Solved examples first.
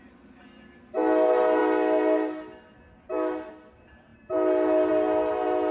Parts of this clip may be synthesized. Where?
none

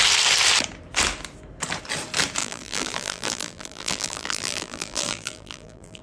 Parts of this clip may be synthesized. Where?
2.4-6.0 (vocoder, BigVGAN v2)

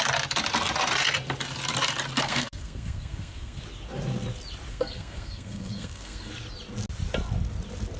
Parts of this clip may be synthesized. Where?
2.2-3.6 (codec, SNAC); 4.7-6.3